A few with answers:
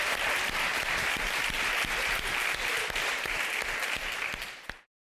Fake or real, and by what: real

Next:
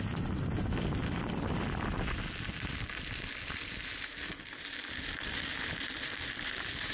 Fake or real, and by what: real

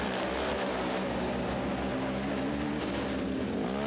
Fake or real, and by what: real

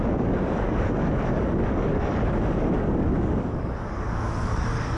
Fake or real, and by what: fake, codec, DAC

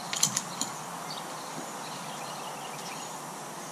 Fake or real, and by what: real